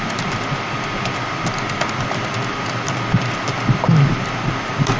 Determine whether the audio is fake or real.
real